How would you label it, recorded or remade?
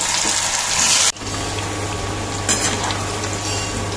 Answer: recorded